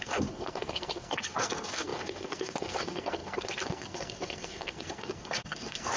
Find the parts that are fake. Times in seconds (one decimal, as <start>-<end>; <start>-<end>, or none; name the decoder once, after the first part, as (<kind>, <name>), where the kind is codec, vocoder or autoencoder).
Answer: 0.0-6.0 (codec, SNAC)